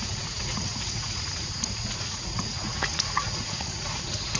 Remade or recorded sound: remade